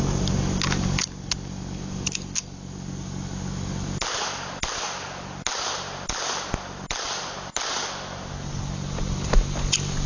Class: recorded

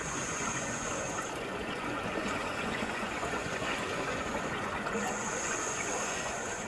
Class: remade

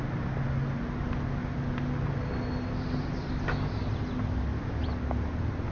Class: recorded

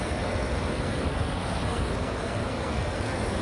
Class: remade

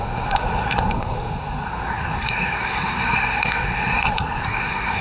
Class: remade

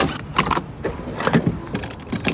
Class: recorded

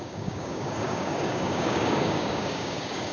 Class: remade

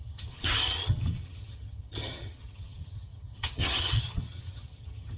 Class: remade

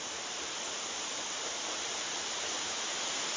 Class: remade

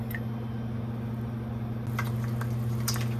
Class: recorded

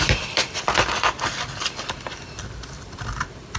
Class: remade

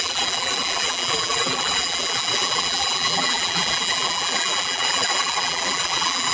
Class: remade